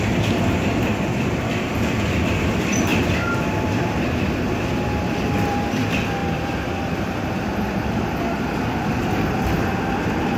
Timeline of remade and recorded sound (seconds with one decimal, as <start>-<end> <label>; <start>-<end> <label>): 0.0-10.4 remade